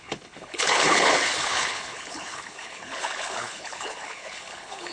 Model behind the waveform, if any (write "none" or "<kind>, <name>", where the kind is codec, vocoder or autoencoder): codec, HILCodec